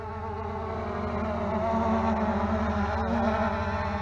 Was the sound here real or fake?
real